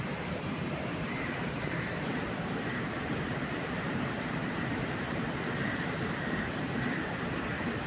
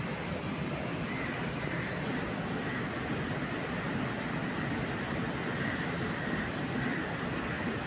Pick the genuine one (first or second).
second